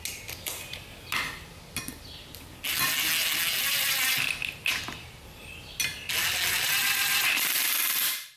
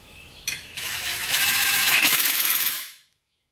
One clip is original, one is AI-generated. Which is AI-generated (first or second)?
second